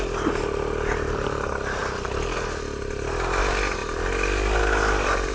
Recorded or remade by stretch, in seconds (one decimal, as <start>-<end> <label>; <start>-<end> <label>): 0.0-5.3 recorded